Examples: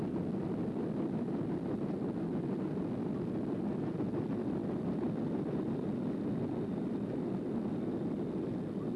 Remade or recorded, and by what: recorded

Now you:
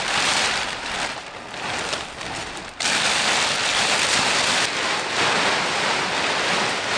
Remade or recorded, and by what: recorded